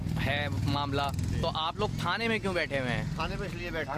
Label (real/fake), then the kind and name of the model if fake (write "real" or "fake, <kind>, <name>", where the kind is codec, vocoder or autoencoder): real